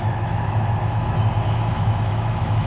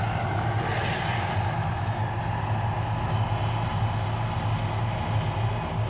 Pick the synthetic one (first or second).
first